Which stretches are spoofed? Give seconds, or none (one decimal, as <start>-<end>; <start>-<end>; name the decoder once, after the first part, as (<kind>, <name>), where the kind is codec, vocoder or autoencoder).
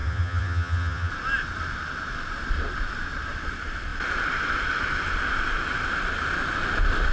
0.0-1.1 (vocoder, HiFi-GAN)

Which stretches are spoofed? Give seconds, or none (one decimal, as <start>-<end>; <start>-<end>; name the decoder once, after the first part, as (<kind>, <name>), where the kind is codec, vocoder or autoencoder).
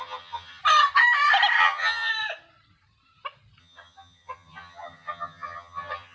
0.0-0.6 (vocoder, HiFi-GAN); 1.6-2.1; 3.6-6.1